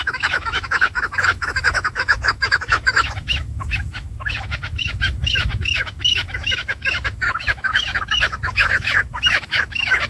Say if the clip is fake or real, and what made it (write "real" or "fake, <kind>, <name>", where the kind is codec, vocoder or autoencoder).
fake, autoencoder, DAC-VAE